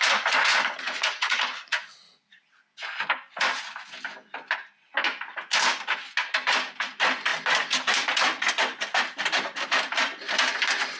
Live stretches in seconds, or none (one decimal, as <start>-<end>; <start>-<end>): 0.0-0.5; 2.4-11.0